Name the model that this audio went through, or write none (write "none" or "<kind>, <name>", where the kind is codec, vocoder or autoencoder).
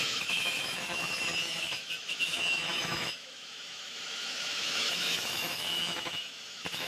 autoencoder, DAC-VAE